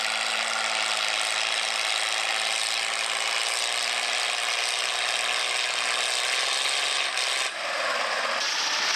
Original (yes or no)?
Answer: yes